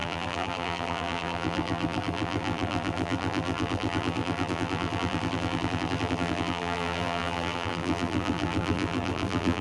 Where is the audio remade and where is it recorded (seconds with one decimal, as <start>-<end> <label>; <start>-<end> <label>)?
0.0-9.6 remade